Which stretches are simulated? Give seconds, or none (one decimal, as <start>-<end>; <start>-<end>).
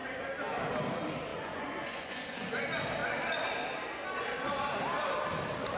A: 1.3-2.6